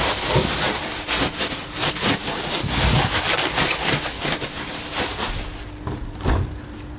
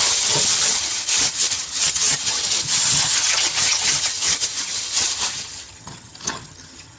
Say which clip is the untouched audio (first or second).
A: first